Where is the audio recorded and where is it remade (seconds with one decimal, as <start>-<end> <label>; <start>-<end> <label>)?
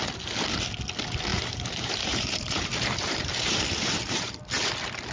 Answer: 0.0-1.3 recorded; 1.3-4.4 remade; 4.4-5.1 recorded